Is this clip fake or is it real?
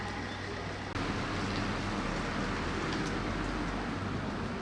real